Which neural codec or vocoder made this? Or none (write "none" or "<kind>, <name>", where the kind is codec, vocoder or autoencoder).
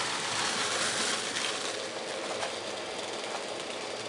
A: none